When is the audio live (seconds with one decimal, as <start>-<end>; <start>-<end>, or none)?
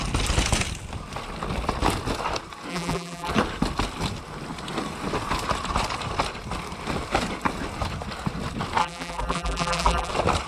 0.0-2.7; 3.3-8.8; 10.1-10.5